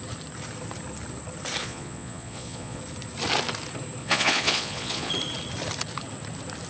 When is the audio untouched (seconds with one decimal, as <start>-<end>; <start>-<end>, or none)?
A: 0.0-1.6; 2.8-4.0; 5.1-6.7